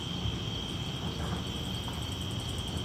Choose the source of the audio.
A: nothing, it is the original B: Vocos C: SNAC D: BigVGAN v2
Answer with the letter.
A